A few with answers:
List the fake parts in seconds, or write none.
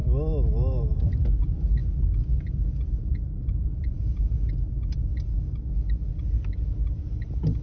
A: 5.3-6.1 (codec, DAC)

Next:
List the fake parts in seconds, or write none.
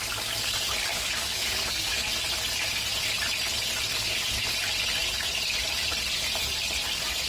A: 0.9-2.1 (codec, DAC)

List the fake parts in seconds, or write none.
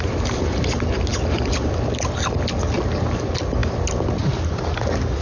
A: none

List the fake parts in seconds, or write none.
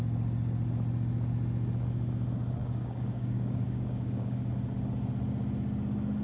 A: 2.6-4.5 (codec, DAC)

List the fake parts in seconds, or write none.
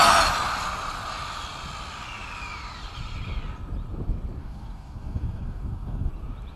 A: 4.4-6.1 (codec, DAC)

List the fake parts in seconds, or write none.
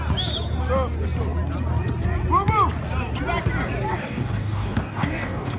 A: 3.9-5.6 (codec, DAC)